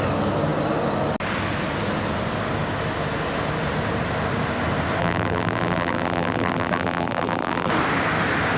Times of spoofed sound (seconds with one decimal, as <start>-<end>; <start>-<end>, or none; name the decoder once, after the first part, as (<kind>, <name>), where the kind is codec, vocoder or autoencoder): 5.0-7.7 (vocoder, BigVGAN v2)